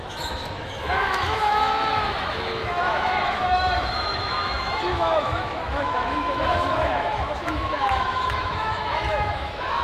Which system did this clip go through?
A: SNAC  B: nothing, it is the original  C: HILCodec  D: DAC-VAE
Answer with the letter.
D